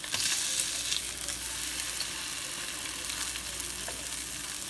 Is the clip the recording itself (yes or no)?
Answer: yes